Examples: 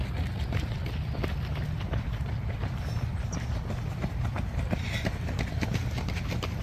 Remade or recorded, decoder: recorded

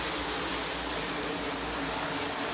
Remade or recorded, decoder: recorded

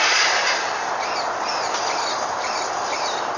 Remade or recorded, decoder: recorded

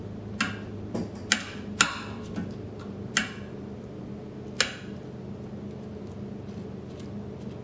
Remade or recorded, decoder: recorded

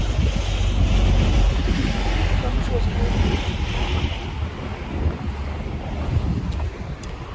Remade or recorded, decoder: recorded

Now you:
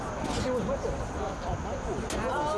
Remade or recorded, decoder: recorded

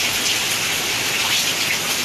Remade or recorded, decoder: recorded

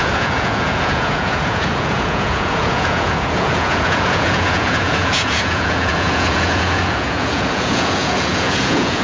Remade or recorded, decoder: remade, vocoder, Vocos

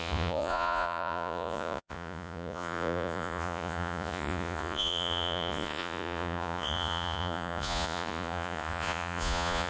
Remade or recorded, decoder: remade, vocoder, Vocos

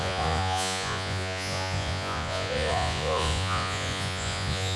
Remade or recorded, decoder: remade, vocoder, Vocos